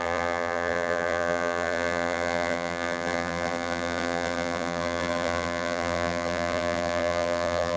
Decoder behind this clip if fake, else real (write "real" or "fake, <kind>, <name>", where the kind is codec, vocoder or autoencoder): fake, vocoder, BigVGAN v2